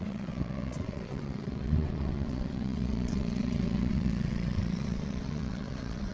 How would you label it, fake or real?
fake